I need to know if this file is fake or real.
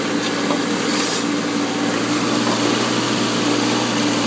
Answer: real